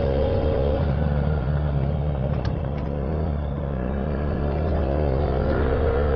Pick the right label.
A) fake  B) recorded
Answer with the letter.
A